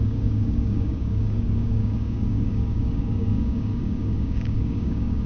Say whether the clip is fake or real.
fake